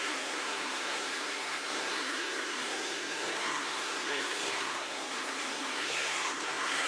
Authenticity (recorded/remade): remade